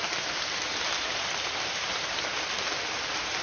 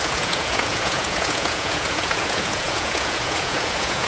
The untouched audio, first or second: first